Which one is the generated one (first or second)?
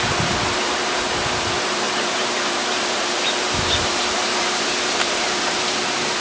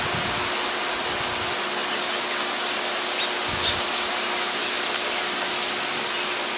first